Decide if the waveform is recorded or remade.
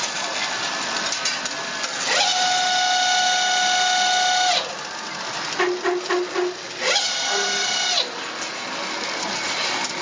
recorded